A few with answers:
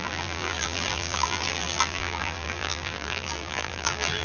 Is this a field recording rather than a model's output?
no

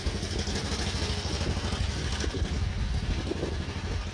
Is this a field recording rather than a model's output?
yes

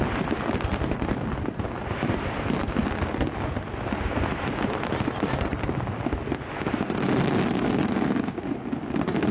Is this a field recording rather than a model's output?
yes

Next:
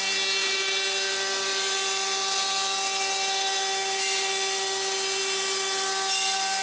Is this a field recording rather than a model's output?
yes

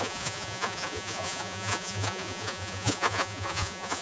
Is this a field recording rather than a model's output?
no